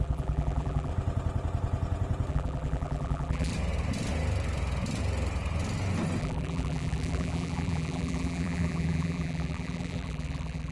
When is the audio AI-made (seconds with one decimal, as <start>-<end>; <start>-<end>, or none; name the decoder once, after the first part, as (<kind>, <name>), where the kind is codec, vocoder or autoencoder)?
0.0-0.9 (vocoder, BigVGAN v2); 2.3-3.5; 6.2-10.7